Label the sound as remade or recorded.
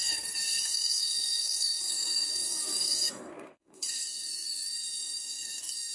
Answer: remade